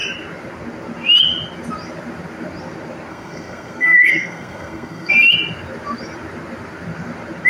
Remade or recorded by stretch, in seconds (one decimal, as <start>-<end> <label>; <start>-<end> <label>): 0.0-3.1 recorded; 3.1-5.1 remade; 5.1-7.5 recorded